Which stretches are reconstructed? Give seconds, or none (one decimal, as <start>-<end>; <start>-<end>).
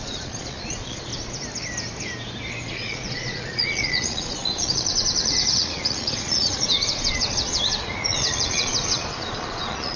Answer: 0.0-1.1; 2.7-10.0